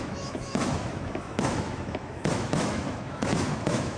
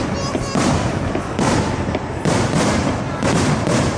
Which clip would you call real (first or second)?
second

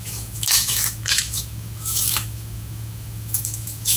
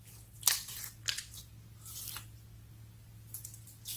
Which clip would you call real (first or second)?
second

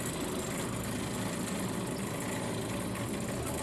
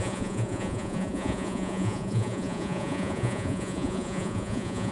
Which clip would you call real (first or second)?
first